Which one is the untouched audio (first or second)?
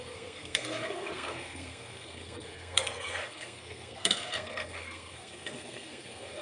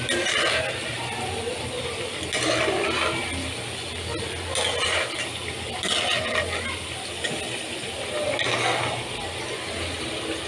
second